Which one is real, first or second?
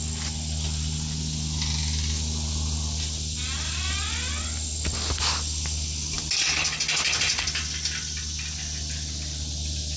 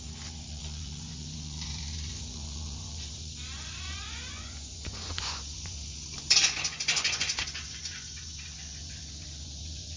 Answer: first